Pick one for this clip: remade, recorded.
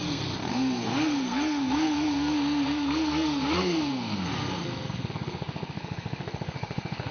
remade